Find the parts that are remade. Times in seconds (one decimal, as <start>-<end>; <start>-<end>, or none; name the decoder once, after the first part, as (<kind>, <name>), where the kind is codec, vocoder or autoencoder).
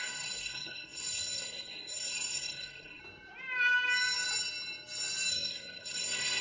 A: 0.0-3.0 (codec, SNAC); 5.3-6.4